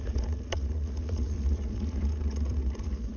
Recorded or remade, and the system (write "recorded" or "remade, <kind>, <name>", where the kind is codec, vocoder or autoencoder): remade, vocoder, Vocos